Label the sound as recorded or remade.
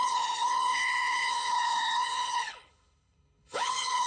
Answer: remade